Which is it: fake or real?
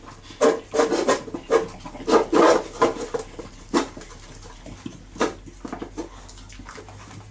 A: real